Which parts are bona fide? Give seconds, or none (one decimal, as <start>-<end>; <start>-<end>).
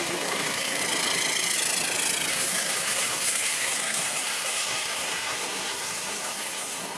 0.8-2.3